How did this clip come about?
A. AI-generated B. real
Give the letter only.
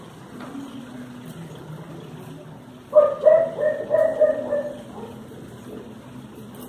B